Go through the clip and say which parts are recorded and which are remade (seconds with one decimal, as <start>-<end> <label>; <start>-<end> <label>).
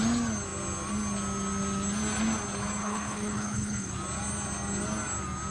0.0-2.8 recorded; 2.8-3.9 remade; 3.9-5.5 recorded